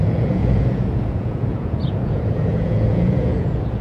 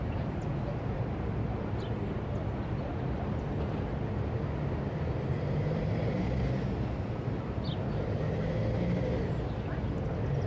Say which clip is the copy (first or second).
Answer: first